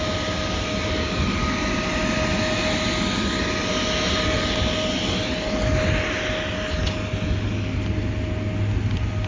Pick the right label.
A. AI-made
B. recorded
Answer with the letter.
B